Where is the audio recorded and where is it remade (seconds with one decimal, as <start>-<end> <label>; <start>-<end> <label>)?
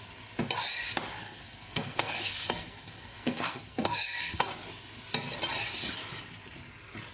0.0-1.2 recorded; 1.2-4.5 remade; 4.5-7.1 recorded